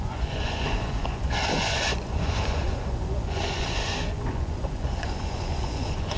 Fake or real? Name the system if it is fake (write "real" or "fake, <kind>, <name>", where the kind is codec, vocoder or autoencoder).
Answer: fake, vocoder, Vocos